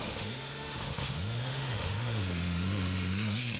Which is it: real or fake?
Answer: fake